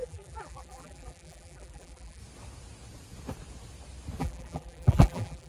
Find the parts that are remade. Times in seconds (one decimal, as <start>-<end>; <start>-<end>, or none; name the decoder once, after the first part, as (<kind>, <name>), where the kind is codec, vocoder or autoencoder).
0.0-2.2 (vocoder, BigVGAN v2); 4.2-5.5